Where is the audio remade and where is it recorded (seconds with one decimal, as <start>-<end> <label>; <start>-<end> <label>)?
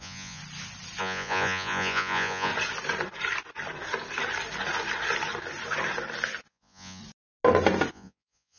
0.0-0.4 remade; 0.4-1.0 recorded; 1.0-2.5 remade; 2.5-6.5 recorded; 6.5-7.0 remade; 7.0-7.9 recorded; 7.9-8.6 remade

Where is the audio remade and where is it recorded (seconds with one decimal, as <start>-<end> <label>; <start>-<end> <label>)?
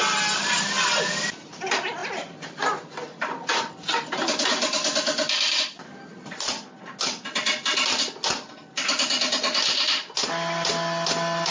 0.0-11.5 recorded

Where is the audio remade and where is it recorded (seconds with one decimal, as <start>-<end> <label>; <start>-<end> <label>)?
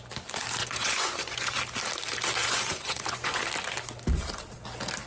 0.0-0.6 recorded; 0.6-1.6 remade; 1.6-2.4 recorded; 2.4-3.4 remade; 3.4-5.1 recorded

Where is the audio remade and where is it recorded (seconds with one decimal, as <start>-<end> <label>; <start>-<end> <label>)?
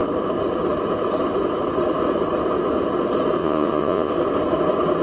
0.0-3.4 recorded; 3.4-4.1 remade; 4.1-5.0 recorded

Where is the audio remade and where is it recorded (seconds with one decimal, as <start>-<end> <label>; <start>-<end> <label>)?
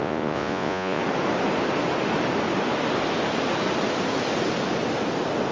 0.0-1.0 remade; 1.0-5.5 recorded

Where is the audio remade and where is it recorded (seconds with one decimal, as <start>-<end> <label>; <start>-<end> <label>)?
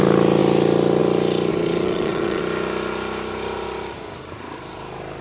0.0-1.5 recorded; 1.5-2.4 remade; 2.4-5.2 recorded